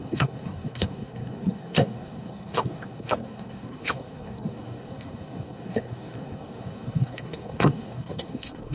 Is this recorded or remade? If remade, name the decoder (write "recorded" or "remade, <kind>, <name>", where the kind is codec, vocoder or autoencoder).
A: remade, codec, SNAC